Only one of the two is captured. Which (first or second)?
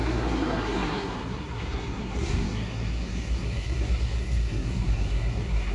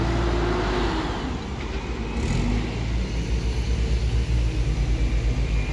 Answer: second